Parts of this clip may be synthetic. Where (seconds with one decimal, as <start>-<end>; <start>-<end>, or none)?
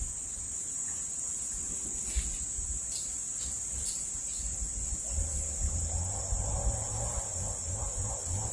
0.0-1.7